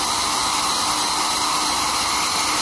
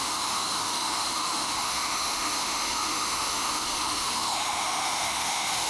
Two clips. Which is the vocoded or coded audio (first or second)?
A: second